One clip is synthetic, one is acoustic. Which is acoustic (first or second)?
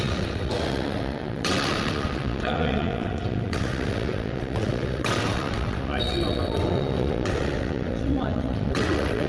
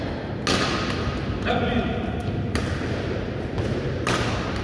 second